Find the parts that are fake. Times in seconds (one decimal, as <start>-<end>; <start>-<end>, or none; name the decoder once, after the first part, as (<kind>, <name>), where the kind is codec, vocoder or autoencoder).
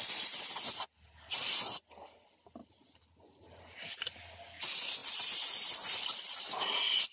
2.6-4.0 (vocoder, BigVGAN v2)